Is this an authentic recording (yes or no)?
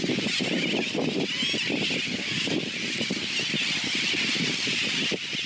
yes